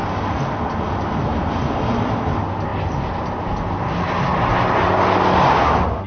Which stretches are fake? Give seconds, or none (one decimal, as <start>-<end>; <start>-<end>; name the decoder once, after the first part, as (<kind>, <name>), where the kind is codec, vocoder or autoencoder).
none